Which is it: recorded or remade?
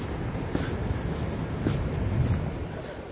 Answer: recorded